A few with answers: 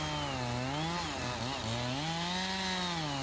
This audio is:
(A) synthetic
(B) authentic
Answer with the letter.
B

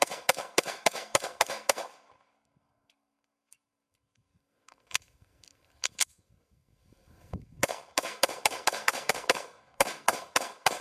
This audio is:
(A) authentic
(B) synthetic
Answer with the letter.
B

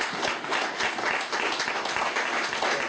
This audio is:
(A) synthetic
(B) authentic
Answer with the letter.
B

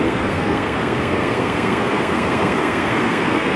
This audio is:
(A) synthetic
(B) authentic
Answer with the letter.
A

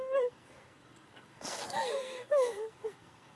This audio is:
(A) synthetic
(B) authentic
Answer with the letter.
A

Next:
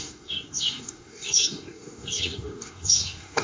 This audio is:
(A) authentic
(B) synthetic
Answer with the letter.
B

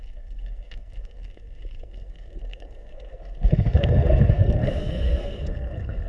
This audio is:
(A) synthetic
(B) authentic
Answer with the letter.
A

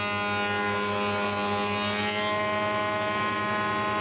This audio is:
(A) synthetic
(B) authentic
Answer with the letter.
B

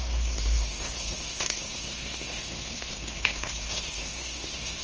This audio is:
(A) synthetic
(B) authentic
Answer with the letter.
A